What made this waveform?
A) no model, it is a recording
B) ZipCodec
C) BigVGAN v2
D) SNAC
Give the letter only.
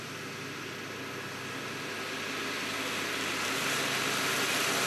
A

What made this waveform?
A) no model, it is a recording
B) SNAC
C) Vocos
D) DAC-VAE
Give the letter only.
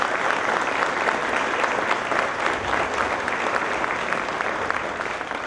A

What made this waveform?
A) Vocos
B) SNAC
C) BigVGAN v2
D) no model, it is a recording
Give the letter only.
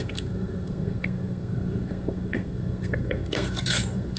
B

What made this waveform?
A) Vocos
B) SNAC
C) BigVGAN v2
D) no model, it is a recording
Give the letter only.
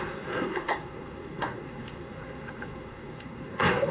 B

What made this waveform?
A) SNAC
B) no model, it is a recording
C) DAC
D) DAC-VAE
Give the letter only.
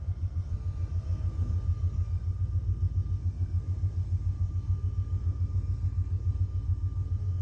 A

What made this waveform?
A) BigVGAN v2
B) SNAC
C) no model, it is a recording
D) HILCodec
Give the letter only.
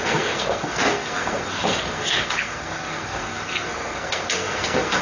B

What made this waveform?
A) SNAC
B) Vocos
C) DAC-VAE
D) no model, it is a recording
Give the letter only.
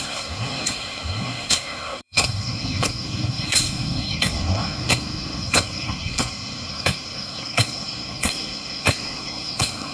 A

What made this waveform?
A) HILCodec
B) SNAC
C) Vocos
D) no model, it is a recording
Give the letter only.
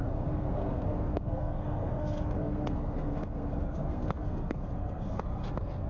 B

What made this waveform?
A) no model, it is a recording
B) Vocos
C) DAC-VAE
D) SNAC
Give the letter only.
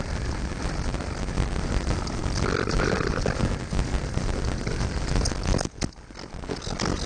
A